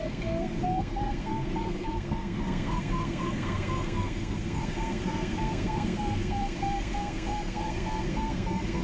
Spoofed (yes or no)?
yes